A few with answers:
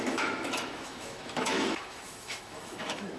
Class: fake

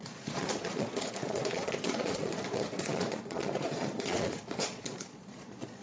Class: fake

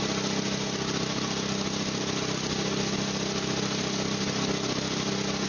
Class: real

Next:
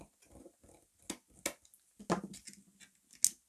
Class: real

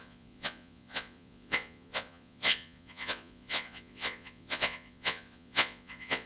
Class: fake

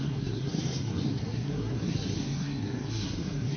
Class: fake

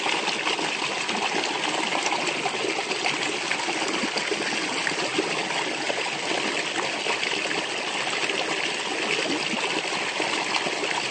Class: real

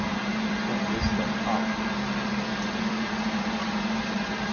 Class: real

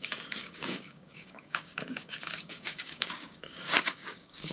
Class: fake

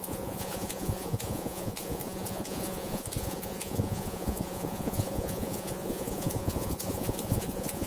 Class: fake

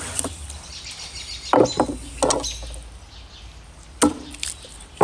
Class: real